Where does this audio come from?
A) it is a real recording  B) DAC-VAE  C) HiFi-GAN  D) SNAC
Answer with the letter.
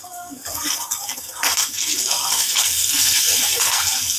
D